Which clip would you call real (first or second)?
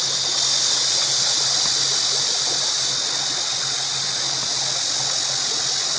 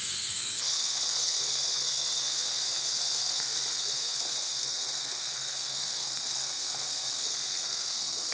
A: first